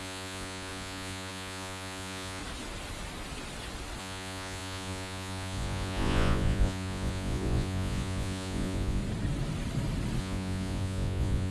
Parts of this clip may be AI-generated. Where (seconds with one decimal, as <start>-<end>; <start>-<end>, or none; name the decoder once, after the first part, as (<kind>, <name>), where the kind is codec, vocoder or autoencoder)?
0.0-2.4 (vocoder, Vocos); 4.0-9.0; 10.2-11.5